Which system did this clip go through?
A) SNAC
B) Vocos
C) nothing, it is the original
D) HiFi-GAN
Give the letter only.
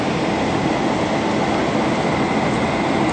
C